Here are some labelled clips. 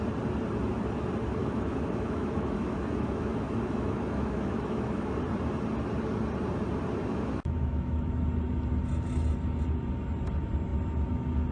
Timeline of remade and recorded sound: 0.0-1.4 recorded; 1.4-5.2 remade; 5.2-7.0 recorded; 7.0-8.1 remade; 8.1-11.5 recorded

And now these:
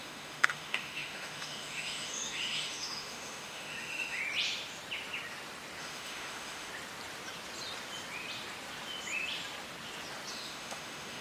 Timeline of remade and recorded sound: 0.0-4.2 remade; 4.2-5.8 recorded; 5.8-6.7 remade; 6.7-10.3 recorded; 10.3-11.2 remade